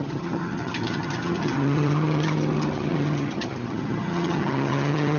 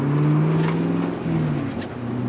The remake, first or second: first